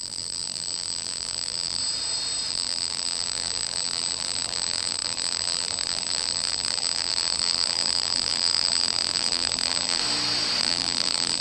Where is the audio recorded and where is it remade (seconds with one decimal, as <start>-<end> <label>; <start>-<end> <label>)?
0.0-1.8 remade; 1.8-2.5 recorded; 2.5-10.0 remade; 10.0-10.6 recorded; 10.6-11.4 remade

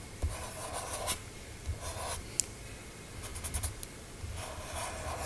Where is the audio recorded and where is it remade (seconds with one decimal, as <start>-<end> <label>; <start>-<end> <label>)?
0.0-5.3 recorded

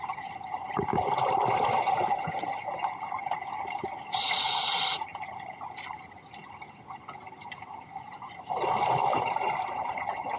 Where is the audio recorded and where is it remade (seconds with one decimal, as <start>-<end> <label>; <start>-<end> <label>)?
0.0-5.1 recorded; 5.1-6.2 remade; 6.2-10.4 recorded

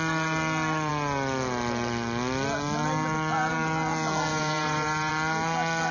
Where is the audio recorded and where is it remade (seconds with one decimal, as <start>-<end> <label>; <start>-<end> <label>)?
0.0-4.3 recorded; 4.3-5.1 remade; 5.1-5.9 recorded

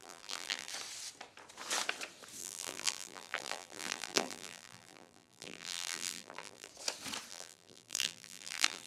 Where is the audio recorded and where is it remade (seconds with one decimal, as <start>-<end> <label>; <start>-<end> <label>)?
0.0-0.7 remade; 0.7-2.4 recorded; 2.4-6.7 remade; 6.7-7.3 recorded; 7.3-8.9 remade

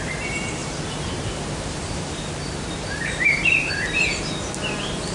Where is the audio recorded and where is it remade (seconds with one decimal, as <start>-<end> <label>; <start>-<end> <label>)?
0.0-5.1 remade

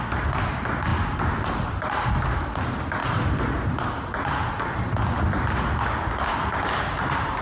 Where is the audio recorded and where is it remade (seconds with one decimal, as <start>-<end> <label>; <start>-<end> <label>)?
0.0-3.0 recorded; 3.0-7.4 remade

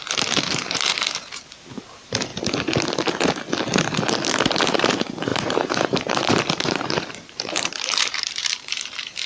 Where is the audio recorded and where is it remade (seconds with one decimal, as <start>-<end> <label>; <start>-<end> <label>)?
0.0-2.3 remade; 2.3-4.3 recorded; 4.3-9.3 remade